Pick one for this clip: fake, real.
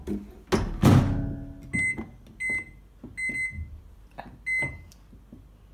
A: real